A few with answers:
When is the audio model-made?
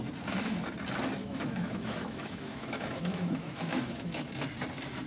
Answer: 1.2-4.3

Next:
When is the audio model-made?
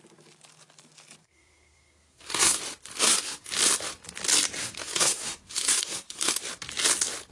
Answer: 1.2-2.6; 3.0-3.5; 4.6-6.3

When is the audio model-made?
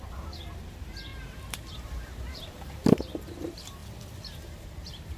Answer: 0.0-3.8; 4.8-5.2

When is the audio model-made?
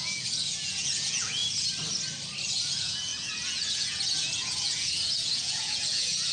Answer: 0.0-1.4; 2.5-6.3